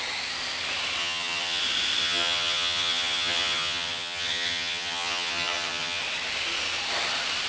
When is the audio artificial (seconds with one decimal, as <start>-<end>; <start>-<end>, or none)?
1.0-1.6; 2.0-6.0